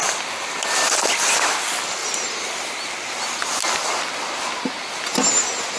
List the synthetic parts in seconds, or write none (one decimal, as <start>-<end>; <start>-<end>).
none